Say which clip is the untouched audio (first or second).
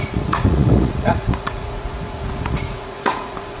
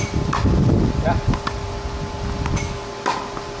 second